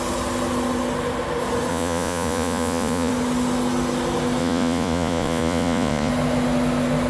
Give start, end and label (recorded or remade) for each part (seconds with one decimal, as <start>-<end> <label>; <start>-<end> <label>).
0.0-1.7 recorded; 1.7-3.1 remade; 3.1-4.4 recorded; 4.4-6.1 remade; 6.1-7.1 recorded